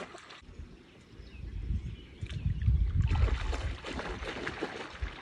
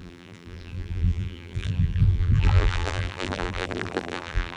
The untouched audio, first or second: first